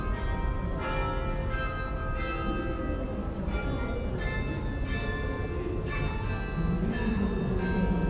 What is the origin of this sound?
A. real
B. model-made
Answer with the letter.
A